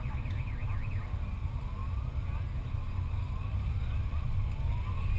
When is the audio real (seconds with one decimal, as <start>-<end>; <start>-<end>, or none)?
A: 0.0-5.2